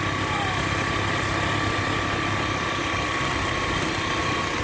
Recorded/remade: recorded